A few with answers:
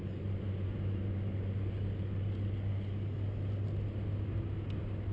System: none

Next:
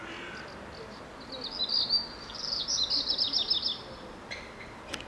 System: none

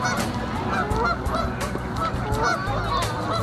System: none